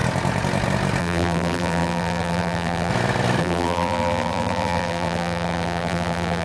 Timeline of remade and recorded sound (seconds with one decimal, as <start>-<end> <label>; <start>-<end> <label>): 0.0-1.0 recorded; 1.0-2.9 remade; 2.9-3.4 recorded; 3.4-6.4 remade